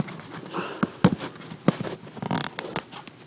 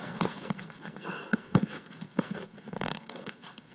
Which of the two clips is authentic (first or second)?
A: first